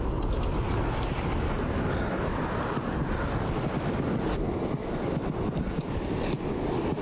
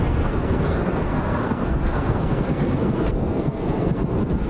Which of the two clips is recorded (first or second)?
first